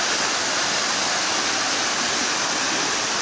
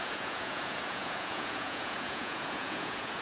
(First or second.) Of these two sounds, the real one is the first